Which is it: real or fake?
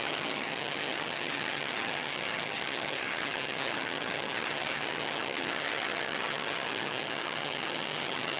fake